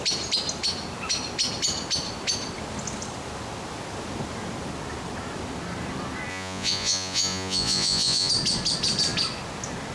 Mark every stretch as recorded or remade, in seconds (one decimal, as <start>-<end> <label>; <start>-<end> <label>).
0.0-6.3 recorded; 6.3-8.3 remade; 8.3-9.9 recorded